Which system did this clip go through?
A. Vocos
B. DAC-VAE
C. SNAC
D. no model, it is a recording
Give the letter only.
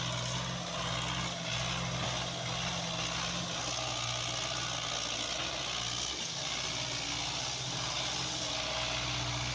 D